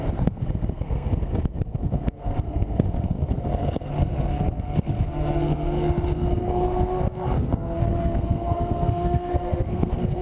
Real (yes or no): no